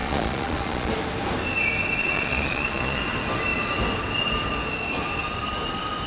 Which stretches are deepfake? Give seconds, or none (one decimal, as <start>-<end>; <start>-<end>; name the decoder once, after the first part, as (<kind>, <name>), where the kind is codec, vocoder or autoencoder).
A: 0.0-0.9 (vocoder, Vocos); 2.0-3.0